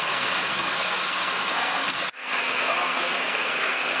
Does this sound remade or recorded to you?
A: remade